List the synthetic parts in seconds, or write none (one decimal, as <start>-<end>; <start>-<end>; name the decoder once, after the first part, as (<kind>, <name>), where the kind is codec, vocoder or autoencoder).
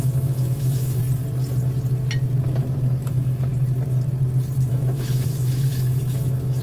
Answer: 0.0-1.0 (autoencoder, DAC-VAE); 3.1-3.5; 4.7-6.6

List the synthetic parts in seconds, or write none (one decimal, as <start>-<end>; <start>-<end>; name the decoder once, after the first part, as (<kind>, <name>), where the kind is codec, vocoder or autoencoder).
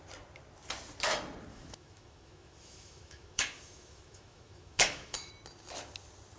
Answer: 1.5-5.3 (autoencoder, DAC-VAE)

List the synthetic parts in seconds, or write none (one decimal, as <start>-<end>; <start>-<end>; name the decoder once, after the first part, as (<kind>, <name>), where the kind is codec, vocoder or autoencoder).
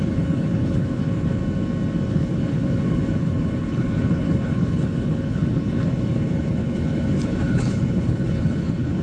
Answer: 0.0-1.4 (codec, HILCodec); 2.1-9.0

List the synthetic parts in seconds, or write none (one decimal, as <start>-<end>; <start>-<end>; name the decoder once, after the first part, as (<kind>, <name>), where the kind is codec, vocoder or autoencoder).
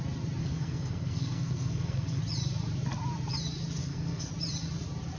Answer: 0.4-2.2 (codec, SNAC); 3.8-4.3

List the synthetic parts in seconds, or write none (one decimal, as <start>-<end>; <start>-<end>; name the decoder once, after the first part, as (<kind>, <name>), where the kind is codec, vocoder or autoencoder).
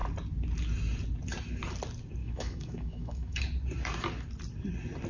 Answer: 2.2-3.4 (autoencoder, DAC-VAE)